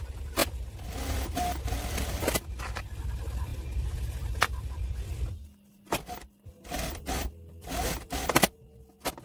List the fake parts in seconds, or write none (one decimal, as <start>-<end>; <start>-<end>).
none